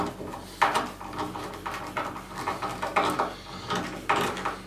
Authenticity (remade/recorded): recorded